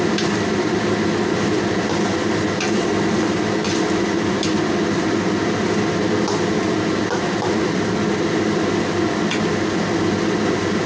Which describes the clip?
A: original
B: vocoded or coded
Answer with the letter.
A